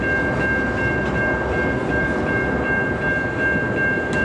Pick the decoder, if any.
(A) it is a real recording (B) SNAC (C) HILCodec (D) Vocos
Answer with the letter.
A